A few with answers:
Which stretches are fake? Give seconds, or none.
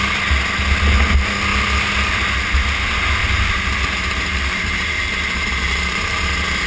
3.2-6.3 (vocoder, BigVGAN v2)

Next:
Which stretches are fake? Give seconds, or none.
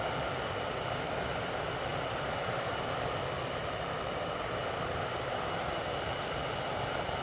none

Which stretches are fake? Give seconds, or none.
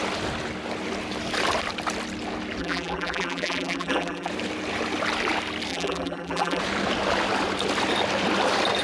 2.6-4.3 (vocoder, BigVGAN v2); 5.7-6.6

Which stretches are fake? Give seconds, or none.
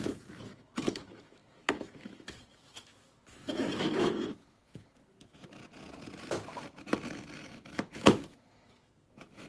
0.0-5.6 (autoencoder, DAC-VAE); 7.5-9.5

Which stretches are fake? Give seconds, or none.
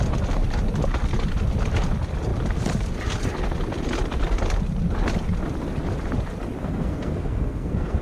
6.6-8.0 (codec, SNAC)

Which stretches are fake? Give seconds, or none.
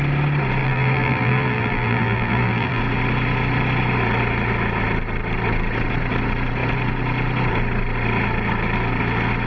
0.6-2.8 (vocoder, BigVGAN v2)